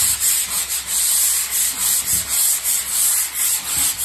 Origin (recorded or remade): recorded